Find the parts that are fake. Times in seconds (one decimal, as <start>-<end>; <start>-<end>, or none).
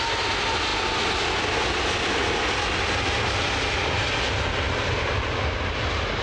none